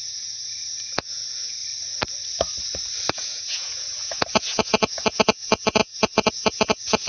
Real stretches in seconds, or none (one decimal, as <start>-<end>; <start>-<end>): 1.6-3.1